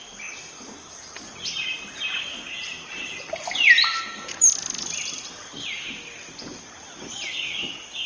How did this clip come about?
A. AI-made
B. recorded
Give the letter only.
B